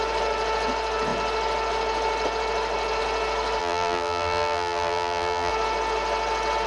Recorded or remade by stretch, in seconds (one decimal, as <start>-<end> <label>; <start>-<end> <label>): 0.0-3.6 recorded; 3.6-5.5 remade; 5.5-6.7 recorded